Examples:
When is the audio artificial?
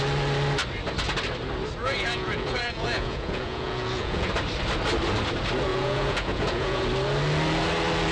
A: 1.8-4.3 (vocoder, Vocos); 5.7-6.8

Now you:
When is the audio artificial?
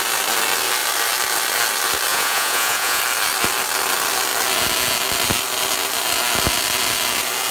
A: 2.1-3.0 (vocoder, Vocos)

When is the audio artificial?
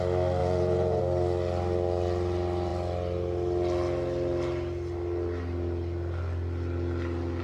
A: 0.4-1.0 (vocoder, Vocos)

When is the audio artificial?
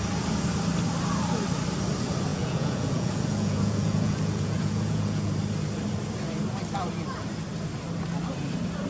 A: 2.3-5.3 (vocoder, Vocos)